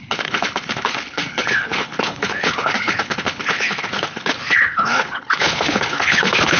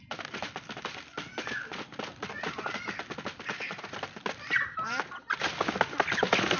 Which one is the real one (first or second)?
second